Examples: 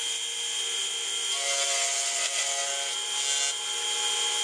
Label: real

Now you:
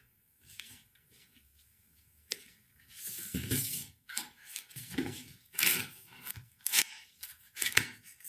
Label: fake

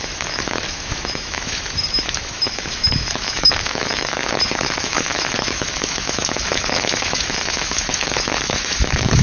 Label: fake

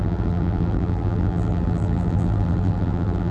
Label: fake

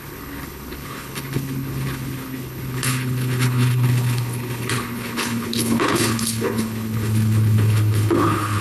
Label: fake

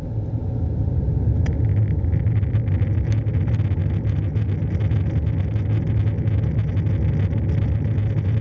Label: real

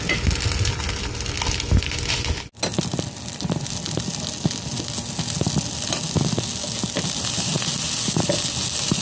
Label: real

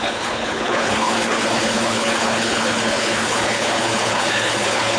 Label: fake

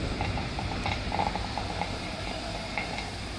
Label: fake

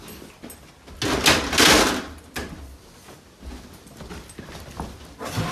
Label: real